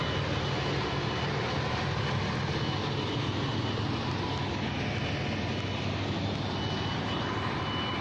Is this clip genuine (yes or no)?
yes